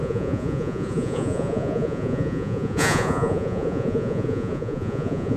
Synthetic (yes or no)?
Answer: yes